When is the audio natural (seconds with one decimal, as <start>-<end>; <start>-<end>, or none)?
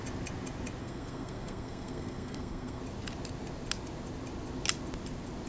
0.0-0.8; 2.8-5.5